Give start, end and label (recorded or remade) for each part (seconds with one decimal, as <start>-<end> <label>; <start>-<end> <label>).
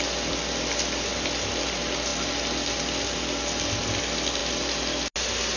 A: 0.0-5.6 recorded